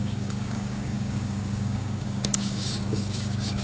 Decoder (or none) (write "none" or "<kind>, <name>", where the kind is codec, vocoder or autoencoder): codec, DAC